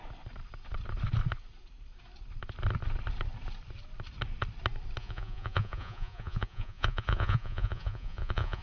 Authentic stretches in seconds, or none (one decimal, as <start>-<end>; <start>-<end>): 0.0-5.0